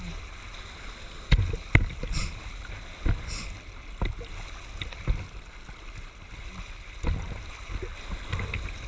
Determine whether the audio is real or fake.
real